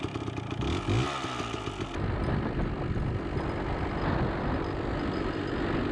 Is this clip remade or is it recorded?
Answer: recorded